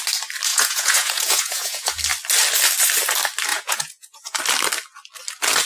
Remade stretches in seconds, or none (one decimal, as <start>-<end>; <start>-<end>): 0.5-2.0; 3.5-4.4